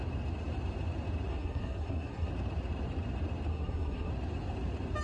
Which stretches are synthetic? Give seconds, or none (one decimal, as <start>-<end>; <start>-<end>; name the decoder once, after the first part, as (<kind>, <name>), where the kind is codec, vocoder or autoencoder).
1.3-2.3 (codec, SNAC); 3.5-4.1